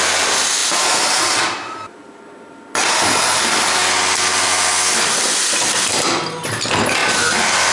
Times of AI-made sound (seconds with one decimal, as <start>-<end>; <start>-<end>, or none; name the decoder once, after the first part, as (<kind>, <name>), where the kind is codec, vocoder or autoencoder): 0.6-2.7 (vocoder, BigVGAN v2); 7.0-7.7